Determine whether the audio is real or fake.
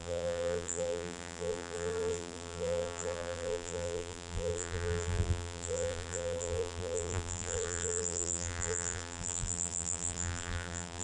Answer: fake